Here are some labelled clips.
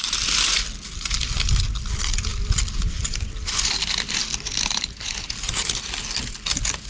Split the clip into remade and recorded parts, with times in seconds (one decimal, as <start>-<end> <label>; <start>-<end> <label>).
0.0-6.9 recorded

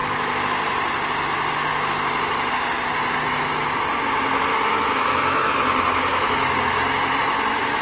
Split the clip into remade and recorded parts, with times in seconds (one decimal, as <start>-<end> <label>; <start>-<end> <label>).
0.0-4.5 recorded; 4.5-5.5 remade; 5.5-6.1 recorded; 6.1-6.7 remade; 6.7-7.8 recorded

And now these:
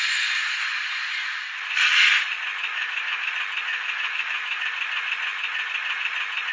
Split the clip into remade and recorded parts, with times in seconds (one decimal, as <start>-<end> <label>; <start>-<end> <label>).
0.0-2.7 recorded; 2.7-3.3 remade; 3.3-3.7 recorded; 3.7-4.6 remade; 4.6-6.5 recorded

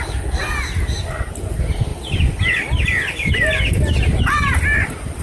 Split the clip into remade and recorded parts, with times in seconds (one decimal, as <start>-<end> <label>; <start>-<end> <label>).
0.0-5.2 recorded

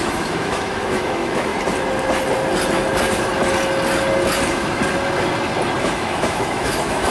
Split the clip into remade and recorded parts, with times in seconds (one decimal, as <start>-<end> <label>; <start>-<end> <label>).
0.0-1.5 remade; 1.5-5.8 recorded; 5.8-7.1 remade